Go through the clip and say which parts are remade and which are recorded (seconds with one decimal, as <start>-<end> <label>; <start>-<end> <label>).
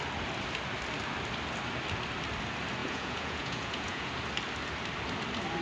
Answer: 0.0-2.8 recorded; 2.8-4.1 remade; 4.1-5.6 recorded